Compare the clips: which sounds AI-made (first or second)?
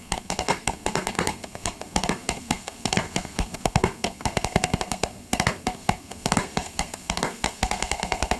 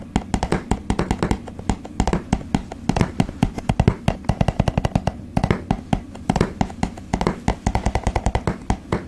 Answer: first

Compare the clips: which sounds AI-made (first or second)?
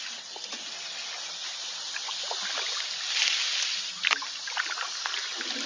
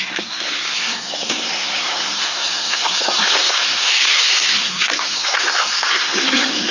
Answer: second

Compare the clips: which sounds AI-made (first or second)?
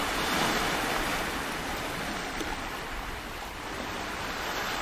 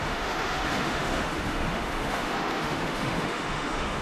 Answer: second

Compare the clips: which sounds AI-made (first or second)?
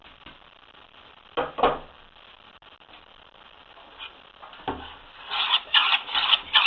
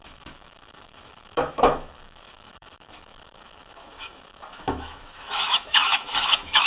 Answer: second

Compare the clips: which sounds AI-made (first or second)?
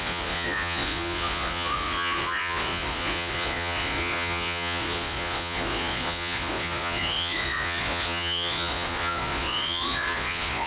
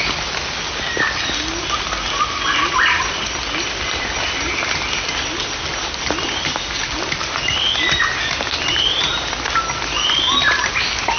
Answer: first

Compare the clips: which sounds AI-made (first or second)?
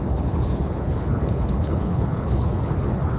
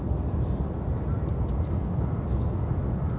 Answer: first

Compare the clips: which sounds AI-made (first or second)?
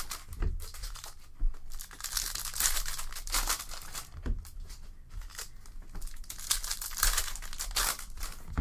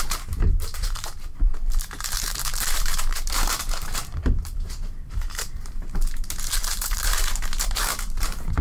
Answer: second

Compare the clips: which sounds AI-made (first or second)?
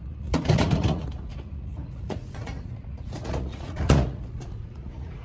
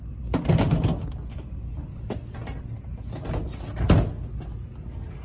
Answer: first